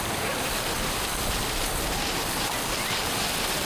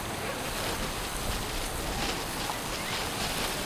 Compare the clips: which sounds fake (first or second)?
first